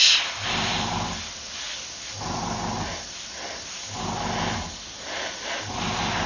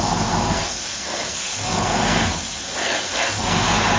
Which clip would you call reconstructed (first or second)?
second